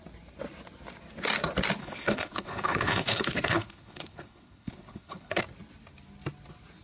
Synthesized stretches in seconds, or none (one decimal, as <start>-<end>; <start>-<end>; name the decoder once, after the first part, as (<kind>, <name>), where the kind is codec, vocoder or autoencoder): 1.8-5.4 (codec, HILCodec)